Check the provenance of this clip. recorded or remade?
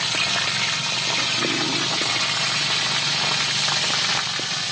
recorded